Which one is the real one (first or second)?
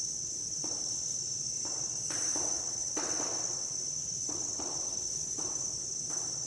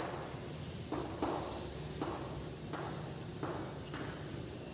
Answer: second